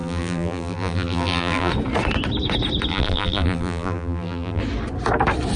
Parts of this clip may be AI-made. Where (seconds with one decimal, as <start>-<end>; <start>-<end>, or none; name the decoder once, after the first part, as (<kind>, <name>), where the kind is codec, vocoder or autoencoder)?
0.0-1.7 (vocoder, BigVGAN v2); 2.9-4.6